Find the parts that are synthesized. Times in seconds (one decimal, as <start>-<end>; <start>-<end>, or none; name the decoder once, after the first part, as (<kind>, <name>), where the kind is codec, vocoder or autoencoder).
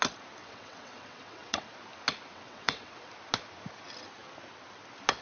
0.4-1.7 (vocoder, WaveNeXt); 2.3-3.1